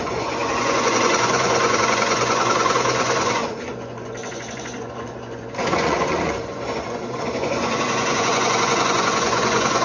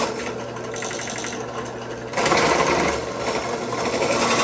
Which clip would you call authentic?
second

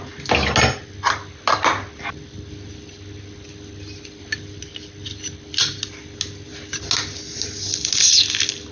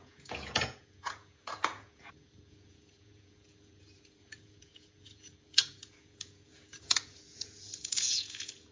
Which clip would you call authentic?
first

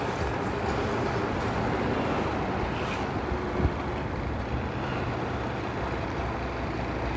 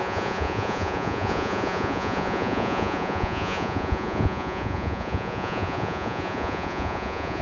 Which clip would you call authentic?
first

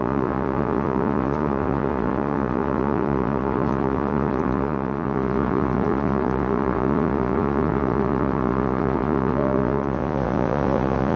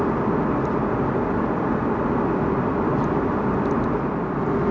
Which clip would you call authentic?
second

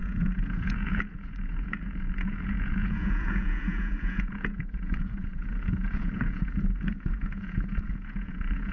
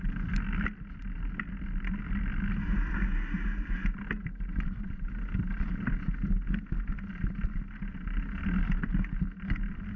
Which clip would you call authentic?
second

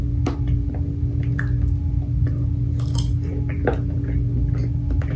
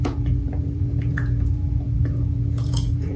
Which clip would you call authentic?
first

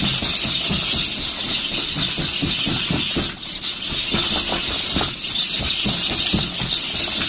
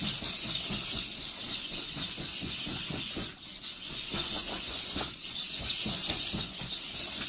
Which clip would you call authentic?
first